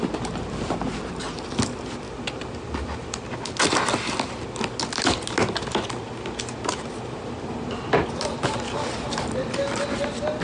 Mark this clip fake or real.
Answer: real